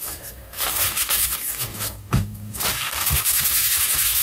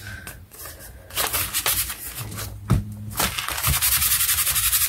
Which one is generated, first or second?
first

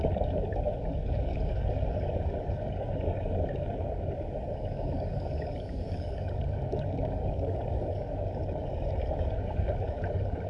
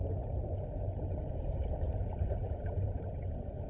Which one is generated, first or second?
first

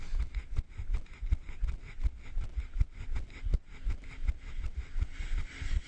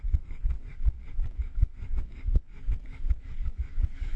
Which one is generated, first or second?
second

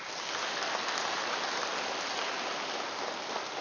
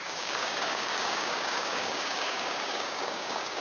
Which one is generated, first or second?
second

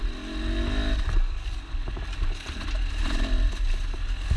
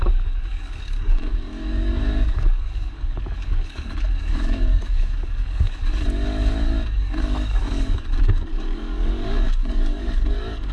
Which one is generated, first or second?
second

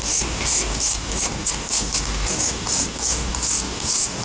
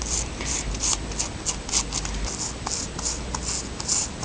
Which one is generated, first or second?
first